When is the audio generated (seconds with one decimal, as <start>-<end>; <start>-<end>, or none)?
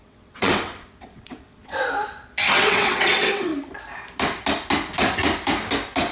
0.0-1.8; 2.5-3.5